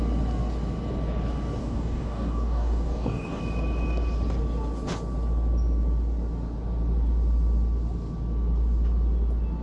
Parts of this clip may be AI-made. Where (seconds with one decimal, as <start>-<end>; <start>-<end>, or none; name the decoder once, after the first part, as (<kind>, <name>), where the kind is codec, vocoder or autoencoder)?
1.6-3.4 (codec, DAC)